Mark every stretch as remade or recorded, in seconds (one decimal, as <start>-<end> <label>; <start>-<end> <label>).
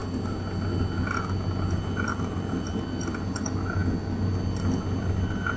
0.0-5.6 recorded